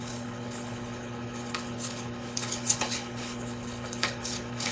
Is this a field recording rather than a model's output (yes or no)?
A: no